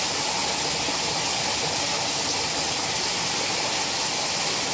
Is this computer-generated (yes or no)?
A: no